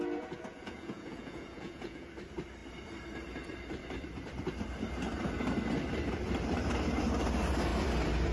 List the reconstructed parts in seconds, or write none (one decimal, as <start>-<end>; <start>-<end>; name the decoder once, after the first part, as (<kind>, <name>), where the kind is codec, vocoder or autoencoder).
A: 0.5-2.1 (vocoder, Vocos)